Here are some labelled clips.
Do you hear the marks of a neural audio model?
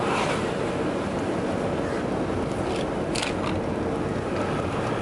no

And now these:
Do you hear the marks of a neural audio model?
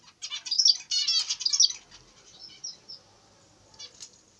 no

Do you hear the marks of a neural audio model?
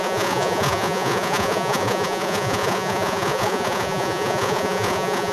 yes